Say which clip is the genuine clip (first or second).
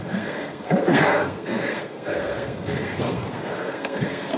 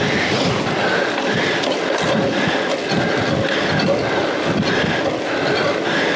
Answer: second